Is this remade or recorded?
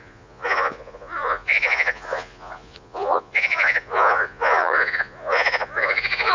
remade